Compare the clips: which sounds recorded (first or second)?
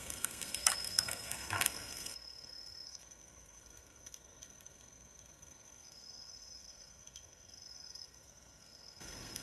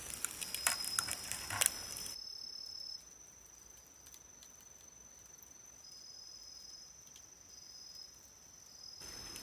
second